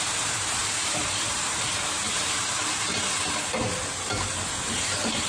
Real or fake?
fake